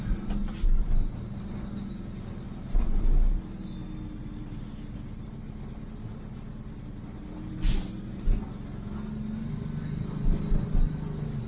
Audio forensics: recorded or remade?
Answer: recorded